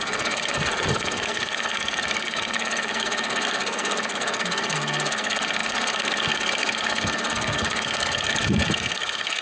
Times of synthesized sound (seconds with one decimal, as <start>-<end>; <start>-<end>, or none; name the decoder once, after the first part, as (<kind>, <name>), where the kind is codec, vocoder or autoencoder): 0.0-9.4 (codec, SNAC)